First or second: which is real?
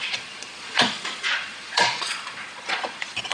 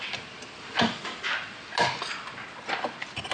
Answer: second